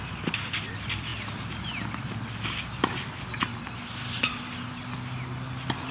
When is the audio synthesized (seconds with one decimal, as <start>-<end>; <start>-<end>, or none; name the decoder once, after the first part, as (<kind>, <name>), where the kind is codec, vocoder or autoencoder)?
none